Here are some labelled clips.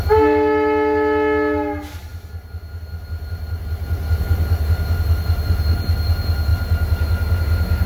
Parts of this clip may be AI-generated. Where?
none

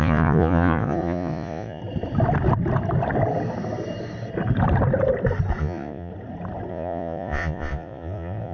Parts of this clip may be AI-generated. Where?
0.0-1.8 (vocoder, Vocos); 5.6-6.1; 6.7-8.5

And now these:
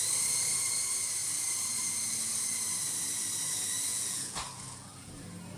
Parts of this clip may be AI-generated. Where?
3.9-5.1 (vocoder, Vocos)